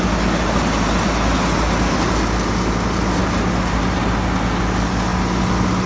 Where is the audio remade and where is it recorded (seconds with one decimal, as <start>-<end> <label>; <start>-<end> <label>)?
0.0-5.9 recorded